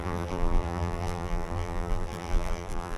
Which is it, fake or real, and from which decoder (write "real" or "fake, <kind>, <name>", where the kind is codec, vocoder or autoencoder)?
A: fake, vocoder, BigVGAN v2